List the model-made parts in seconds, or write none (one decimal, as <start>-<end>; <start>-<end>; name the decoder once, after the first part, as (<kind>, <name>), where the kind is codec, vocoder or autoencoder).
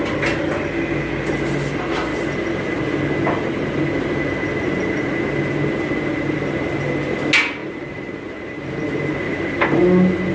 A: 7.6-8.7 (vocoder, BigVGAN v2)